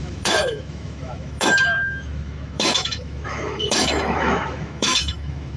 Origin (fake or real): fake